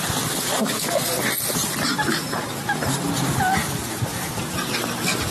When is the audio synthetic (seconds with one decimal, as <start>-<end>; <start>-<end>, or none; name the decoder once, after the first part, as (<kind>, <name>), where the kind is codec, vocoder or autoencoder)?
none